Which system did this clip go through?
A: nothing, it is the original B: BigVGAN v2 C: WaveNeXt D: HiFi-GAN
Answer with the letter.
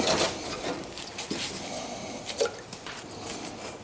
A